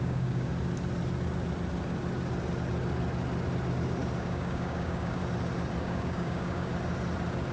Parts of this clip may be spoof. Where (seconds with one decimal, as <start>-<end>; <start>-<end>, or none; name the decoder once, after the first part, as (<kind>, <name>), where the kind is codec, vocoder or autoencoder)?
0.0-0.5 (codec, DAC); 4.2-5.2; 5.8-6.7